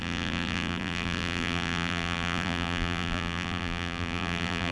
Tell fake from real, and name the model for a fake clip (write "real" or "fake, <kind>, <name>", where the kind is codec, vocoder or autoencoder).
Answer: fake, vocoder, BigVGAN v2